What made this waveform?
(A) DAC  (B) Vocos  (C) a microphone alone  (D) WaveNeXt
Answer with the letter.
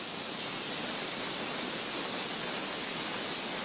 C